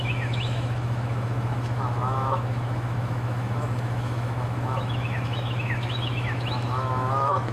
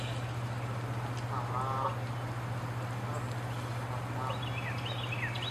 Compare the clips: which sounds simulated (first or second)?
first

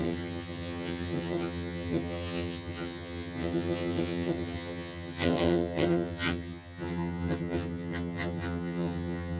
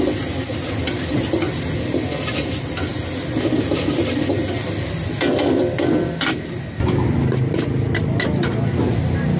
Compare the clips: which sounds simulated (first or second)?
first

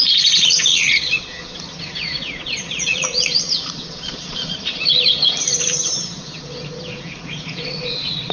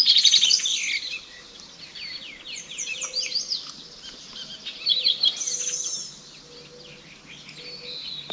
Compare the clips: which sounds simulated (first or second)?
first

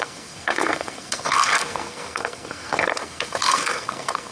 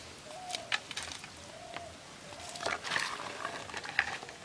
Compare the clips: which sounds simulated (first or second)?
first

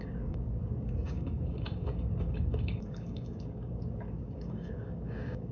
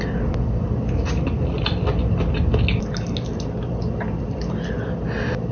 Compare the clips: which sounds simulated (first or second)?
first